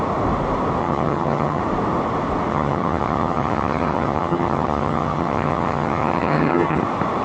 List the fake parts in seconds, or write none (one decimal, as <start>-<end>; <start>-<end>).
0.8-1.6; 2.5-6.8